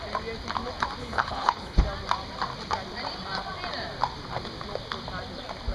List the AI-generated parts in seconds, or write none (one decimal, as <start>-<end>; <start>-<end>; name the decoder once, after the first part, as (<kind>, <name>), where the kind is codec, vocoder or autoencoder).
1.0-1.8 (codec, HILCodec)